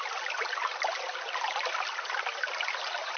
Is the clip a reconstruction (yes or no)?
no